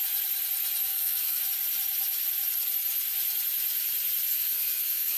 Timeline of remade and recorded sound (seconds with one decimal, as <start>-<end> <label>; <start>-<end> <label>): 0.0-0.9 recorded; 0.9-1.4 remade; 1.4-4.3 recorded; 4.3-5.2 remade